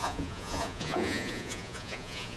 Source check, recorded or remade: remade